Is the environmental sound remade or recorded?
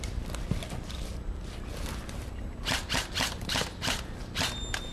recorded